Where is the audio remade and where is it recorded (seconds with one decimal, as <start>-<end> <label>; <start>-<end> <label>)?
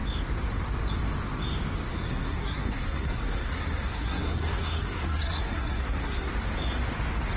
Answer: 0.0-1.9 recorded; 1.9-6.3 remade; 6.3-7.4 recorded